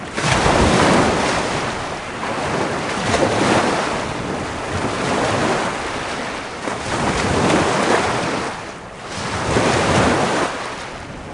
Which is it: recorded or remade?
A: recorded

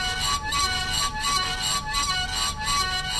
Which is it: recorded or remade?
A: recorded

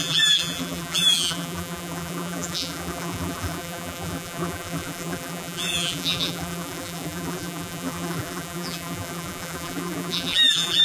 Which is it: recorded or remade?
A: remade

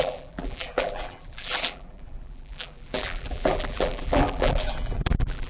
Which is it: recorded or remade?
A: remade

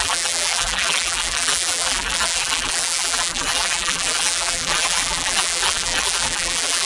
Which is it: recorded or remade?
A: remade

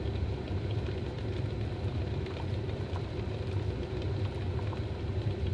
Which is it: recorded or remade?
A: recorded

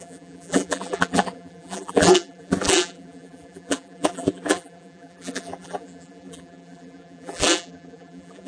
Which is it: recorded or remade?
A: remade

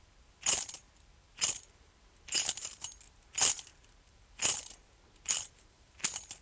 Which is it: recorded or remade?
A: remade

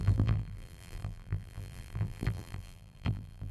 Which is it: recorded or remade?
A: remade